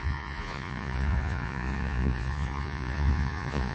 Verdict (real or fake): fake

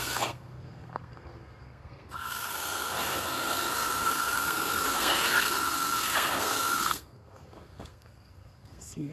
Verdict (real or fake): fake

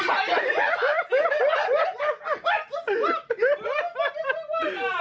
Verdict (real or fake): fake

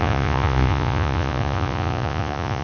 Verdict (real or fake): fake